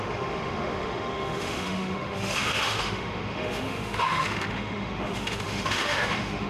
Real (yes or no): no